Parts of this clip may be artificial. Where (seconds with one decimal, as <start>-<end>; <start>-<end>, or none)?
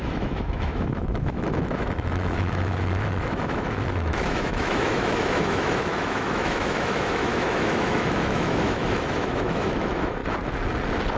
0.0-10.2